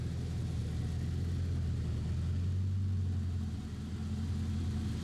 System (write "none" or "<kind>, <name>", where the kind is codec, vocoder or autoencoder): none